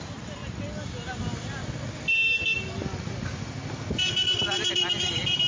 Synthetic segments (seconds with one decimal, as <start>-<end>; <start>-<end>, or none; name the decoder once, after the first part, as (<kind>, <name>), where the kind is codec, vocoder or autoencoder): 0.0-0.4 (vocoder, BigVGAN v2); 1.1-1.6; 4.9-5.5